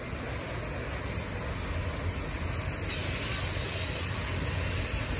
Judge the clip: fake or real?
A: real